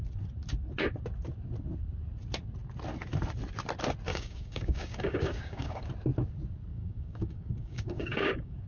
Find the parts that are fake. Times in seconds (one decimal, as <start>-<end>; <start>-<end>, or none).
4.1-5.9; 6.7-8.7

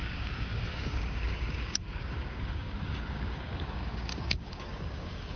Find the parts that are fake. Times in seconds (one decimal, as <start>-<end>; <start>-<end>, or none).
0.0-5.4

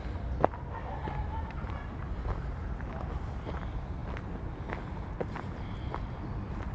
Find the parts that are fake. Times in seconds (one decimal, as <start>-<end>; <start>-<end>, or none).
none

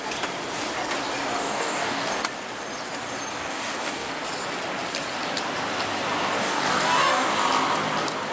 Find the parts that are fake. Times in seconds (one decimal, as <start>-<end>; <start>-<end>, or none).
1.4-2.1; 3.3-4.1; 6.4-7.3

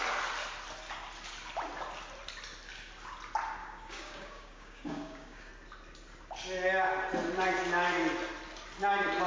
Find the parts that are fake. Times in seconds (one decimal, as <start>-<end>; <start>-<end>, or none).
3.6-5.5

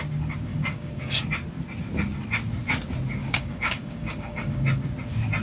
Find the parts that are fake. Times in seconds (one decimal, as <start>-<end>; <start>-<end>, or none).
0.5-1.2; 3.2-4.6

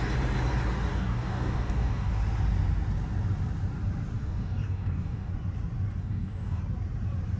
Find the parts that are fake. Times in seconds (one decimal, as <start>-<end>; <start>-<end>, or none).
0.9-2.1; 4.2-5.3; 6.0-6.6